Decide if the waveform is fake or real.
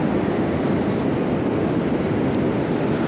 real